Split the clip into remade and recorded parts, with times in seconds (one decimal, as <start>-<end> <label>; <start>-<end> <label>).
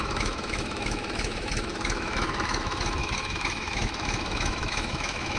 0.0-5.4 remade